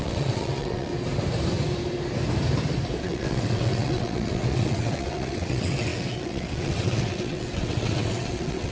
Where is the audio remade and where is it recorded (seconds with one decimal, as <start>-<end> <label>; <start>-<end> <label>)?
0.0-0.9 remade; 0.9-3.0 recorded; 3.0-8.7 remade